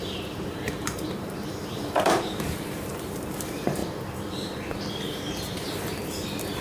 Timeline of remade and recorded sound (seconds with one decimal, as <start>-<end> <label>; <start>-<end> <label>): 0.0-3.8 remade; 3.8-4.9 recorded; 4.9-6.6 remade